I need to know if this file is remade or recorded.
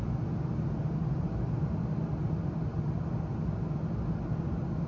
recorded